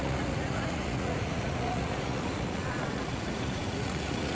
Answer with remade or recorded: remade